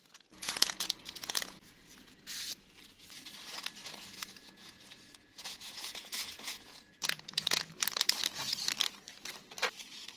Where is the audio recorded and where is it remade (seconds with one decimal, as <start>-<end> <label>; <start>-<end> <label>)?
0.0-2.1 remade; 2.1-3.8 recorded; 3.8-7.7 remade; 7.7-10.2 recorded